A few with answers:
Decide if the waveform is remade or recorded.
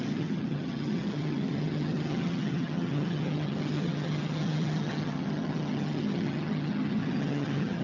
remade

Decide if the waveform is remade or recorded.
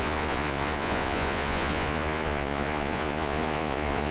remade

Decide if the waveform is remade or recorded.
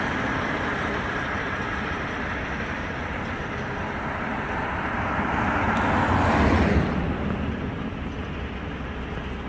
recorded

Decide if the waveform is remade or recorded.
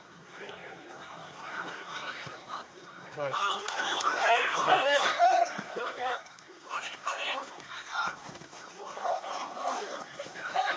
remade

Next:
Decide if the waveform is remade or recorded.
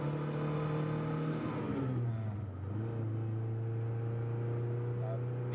recorded